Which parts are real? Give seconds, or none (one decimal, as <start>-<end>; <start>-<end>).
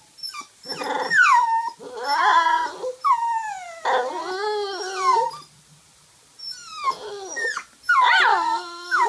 0.0-8.3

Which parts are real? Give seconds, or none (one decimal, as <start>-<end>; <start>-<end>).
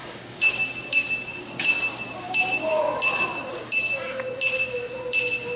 2.8-3.5; 4.2-5.6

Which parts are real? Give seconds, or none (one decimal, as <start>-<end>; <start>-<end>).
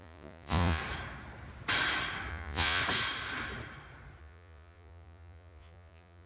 0.8-2.3; 2.8-4.2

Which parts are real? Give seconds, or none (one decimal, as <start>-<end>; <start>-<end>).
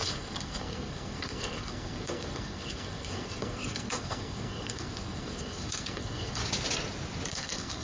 6.4-7.3